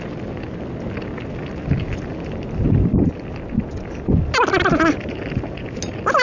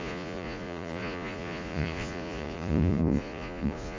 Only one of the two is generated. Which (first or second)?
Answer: second